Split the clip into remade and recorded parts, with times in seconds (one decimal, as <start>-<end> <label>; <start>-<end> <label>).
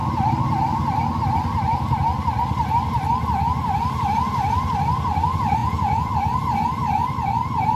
0.0-5.6 recorded; 5.6-6.1 remade; 6.1-7.8 recorded